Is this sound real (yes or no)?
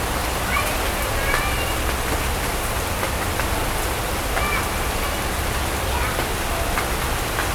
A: yes